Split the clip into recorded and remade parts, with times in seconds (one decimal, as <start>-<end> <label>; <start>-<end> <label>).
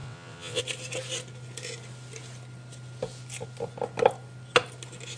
0.0-0.6 remade; 0.6-5.2 recorded